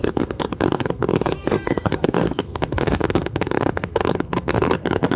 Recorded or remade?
remade